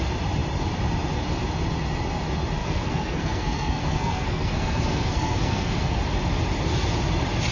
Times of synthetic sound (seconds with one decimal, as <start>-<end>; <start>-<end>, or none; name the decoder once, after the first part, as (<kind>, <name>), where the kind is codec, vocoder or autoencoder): 2.6-6.0 (codec, SNAC)